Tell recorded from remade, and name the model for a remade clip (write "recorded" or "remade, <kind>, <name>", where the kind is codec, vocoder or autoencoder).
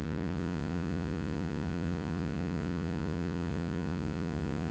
remade, vocoder, Vocos